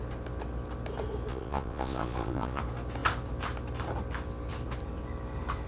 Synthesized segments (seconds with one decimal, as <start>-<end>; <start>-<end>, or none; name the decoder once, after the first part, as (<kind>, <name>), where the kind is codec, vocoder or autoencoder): 1.3-2.6 (vocoder, Vocos)